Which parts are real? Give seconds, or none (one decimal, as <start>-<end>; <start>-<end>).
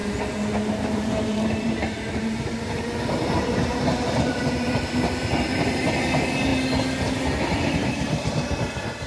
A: 0.0-0.7; 6.5-7.7